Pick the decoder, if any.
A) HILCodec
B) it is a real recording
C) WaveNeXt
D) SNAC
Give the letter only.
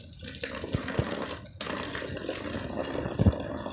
B